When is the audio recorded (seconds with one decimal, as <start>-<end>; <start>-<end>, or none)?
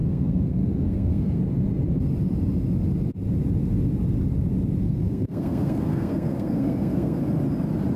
1.4-4.8; 7.2-8.0